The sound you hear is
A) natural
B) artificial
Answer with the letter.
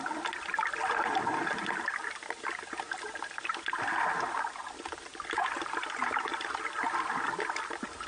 A